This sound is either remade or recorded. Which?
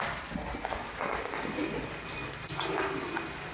recorded